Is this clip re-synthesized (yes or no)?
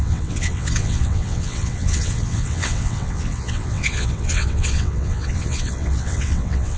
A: yes